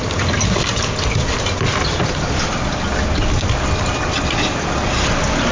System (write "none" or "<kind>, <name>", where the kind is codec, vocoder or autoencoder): none